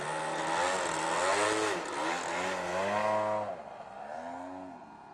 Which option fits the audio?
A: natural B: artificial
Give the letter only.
A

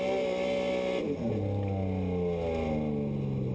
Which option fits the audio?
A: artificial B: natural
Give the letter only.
B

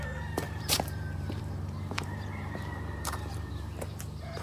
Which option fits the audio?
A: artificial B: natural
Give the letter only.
A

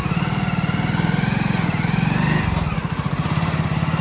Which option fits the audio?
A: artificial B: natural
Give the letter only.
B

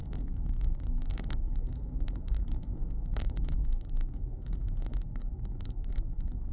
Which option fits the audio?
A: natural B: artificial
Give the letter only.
B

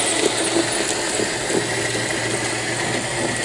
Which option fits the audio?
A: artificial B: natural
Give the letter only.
B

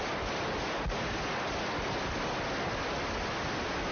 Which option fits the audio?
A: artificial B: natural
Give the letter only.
B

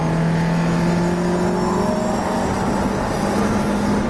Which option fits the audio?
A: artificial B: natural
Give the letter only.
B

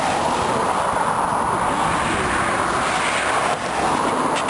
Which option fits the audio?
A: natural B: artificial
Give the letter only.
A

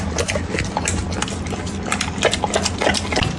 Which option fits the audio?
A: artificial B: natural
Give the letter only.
B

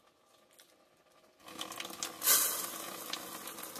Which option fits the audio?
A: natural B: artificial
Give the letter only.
A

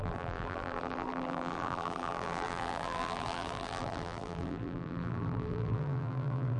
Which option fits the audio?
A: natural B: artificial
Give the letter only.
B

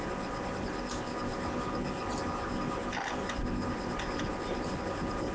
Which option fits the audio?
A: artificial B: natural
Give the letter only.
B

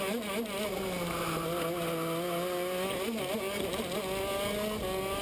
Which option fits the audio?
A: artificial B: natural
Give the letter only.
B